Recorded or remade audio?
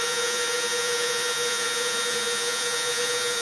remade